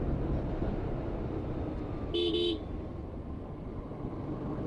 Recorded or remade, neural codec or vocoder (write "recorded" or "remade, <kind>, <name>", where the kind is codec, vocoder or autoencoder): recorded